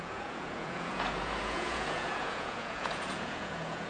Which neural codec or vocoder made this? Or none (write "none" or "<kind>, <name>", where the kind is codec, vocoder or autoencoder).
vocoder, Vocos